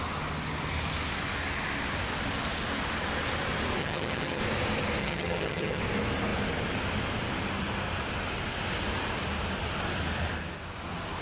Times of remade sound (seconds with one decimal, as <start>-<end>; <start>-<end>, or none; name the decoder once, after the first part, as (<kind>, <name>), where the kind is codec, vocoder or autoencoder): 3.8-4.4 (vocoder, HiFi-GAN); 5.0-5.8